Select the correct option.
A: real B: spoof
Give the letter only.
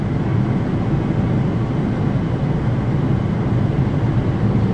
A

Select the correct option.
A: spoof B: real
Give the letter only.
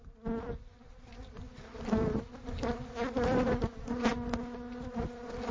B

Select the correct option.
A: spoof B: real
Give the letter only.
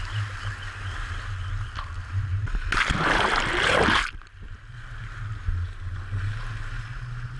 B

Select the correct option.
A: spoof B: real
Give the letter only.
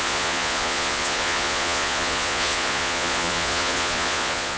A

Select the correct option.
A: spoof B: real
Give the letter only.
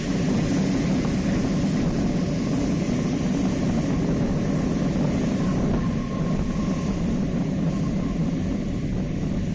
B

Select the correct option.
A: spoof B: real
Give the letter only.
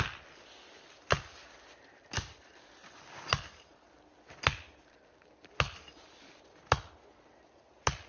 B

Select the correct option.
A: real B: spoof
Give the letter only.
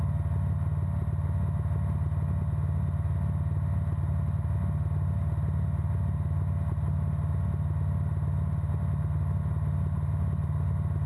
A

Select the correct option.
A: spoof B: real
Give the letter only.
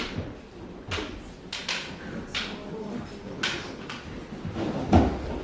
B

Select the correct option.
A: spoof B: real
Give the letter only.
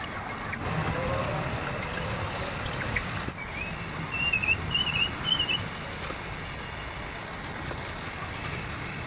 B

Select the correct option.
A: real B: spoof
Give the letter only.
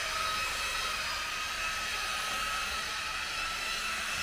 B